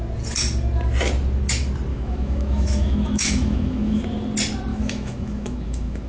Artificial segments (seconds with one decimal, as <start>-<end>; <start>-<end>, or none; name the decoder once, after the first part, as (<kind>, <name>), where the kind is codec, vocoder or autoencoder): 1.9-4.0 (autoencoder, DAC-VAE); 4.7-6.1